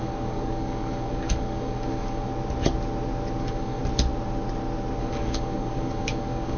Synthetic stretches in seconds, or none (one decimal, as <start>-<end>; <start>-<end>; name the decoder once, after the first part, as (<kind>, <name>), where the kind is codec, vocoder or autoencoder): 0.0-2.3 (codec, DAC); 3.4-3.8; 5.0-6.6